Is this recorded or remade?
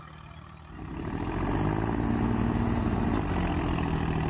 recorded